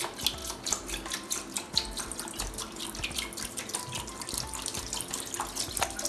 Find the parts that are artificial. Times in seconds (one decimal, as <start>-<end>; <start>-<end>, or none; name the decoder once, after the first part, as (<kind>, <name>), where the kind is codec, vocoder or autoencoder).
none